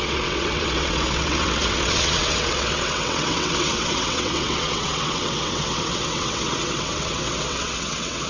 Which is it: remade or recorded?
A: remade